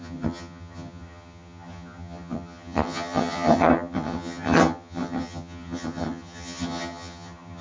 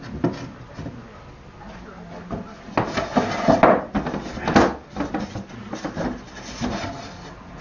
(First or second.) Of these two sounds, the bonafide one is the second